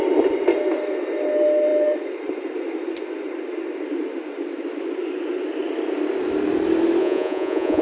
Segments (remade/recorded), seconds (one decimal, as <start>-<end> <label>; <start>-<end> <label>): 0.0-7.0 recorded; 7.0-7.8 remade